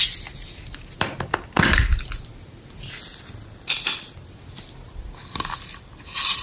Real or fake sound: real